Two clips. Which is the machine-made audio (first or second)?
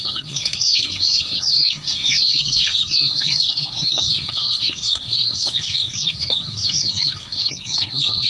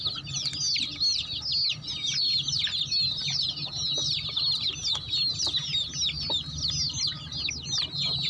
first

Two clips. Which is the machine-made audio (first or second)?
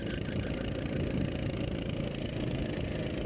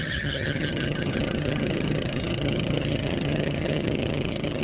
second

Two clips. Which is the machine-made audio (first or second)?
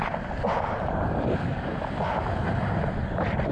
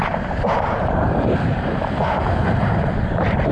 second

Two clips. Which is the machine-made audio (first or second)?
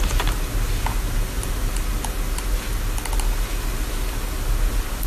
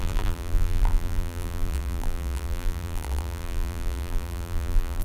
second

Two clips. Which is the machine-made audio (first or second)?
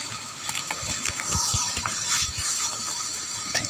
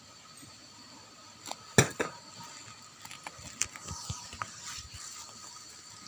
first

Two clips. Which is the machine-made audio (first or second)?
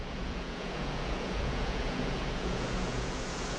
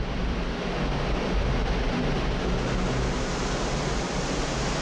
first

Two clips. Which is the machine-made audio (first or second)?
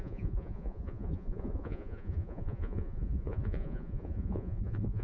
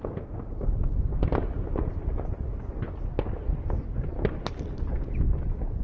first